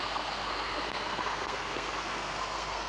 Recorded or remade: remade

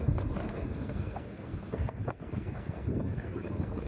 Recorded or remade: remade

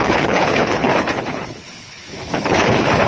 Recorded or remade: remade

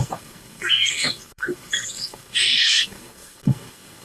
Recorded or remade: remade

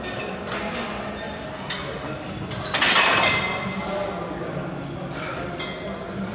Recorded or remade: recorded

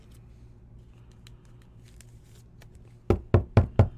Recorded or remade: recorded